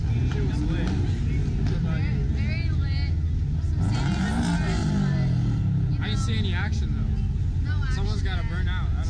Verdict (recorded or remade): recorded